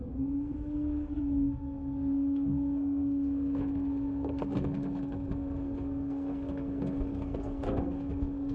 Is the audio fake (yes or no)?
yes